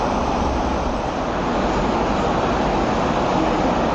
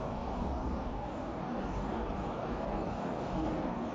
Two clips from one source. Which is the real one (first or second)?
first